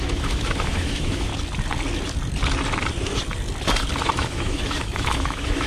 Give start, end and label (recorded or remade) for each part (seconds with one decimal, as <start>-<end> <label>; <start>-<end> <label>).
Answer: 0.0-1.3 remade; 1.3-4.0 recorded; 4.0-5.7 remade